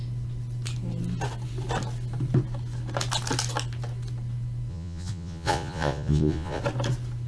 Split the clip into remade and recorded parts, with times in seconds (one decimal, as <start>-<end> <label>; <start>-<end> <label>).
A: 0.0-4.7 recorded; 4.7-6.6 remade; 6.6-7.3 recorded